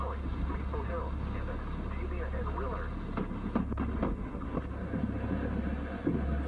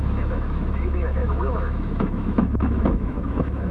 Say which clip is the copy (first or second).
second